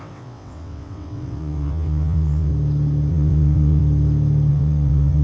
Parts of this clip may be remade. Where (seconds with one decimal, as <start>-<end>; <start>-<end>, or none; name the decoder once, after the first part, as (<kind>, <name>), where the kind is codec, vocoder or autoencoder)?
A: 0.0-2.5 (vocoder, WaveNeXt); 3.1-3.8; 4.5-5.2